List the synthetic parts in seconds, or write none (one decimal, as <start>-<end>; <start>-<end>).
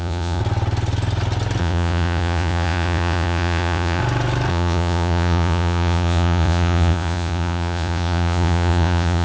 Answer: 0.0-0.4; 1.6-4.0; 4.5-9.2